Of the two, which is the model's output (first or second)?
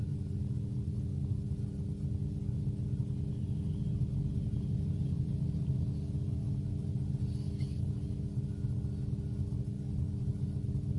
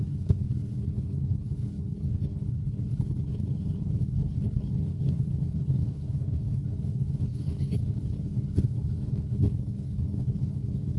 second